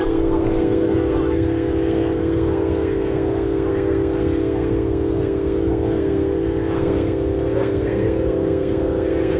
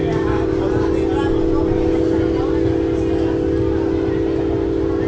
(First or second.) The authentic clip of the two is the second